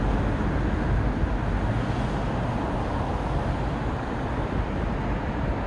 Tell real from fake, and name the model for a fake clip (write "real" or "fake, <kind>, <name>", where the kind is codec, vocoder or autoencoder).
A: real